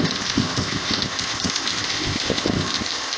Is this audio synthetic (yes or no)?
yes